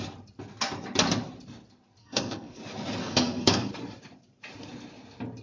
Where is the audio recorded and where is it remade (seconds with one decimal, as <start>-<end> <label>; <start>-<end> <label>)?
0.0-2.0 recorded; 2.0-2.6 remade; 2.6-3.0 recorded; 3.0-3.7 remade; 3.7-5.4 recorded